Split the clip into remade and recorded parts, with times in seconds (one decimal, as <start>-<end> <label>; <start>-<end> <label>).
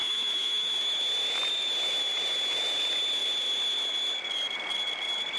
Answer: 0.0-0.8 remade; 0.8-5.4 recorded